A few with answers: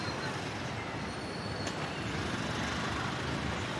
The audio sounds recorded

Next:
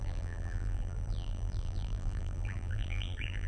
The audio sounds remade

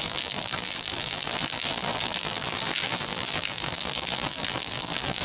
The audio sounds remade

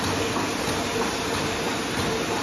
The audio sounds recorded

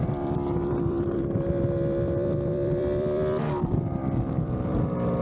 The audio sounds remade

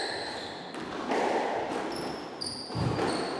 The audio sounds remade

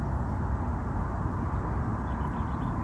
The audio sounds recorded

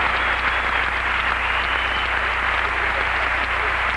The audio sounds recorded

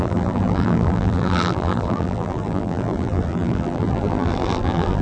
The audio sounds remade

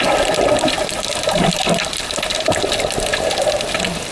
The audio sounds recorded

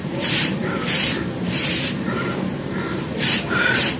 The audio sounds remade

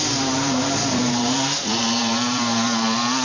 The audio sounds remade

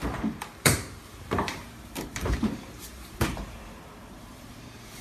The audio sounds remade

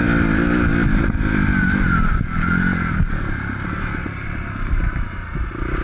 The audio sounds recorded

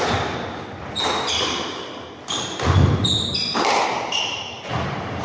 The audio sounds recorded